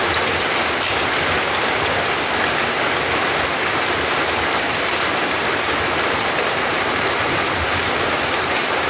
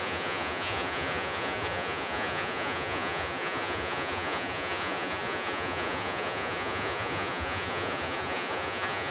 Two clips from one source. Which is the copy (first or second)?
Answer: second